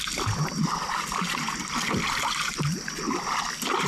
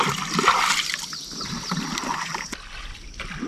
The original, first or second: second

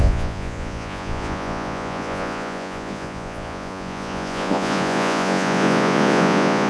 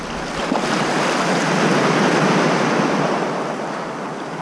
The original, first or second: second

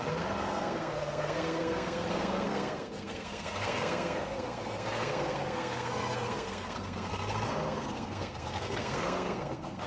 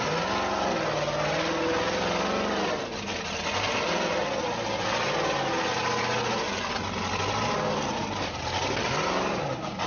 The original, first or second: second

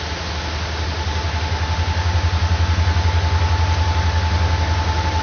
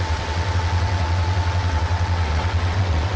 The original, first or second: first